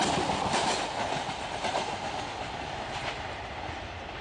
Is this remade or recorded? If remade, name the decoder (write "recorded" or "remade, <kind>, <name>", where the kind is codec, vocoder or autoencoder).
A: recorded